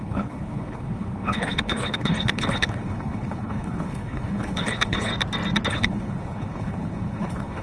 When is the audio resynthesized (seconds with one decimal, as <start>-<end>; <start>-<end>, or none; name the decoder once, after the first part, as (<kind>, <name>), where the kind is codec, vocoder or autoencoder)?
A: 0.0-5.1 (codec, HILCodec); 5.7-7.6